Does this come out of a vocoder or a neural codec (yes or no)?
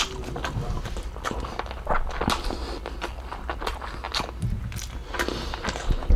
no